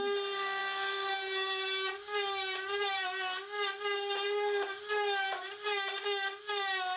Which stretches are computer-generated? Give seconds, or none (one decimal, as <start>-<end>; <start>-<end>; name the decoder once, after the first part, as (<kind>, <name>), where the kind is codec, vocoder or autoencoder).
none